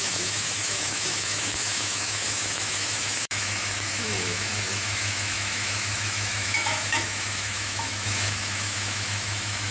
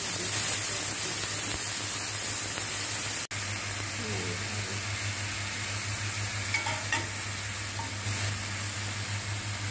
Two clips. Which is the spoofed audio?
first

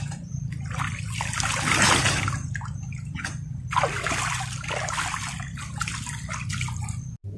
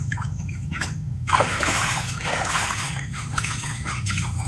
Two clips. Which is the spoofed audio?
second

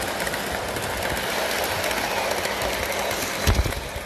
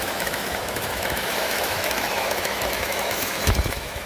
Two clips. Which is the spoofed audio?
second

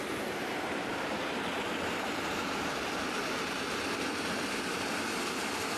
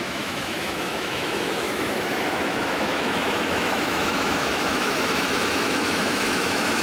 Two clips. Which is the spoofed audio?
second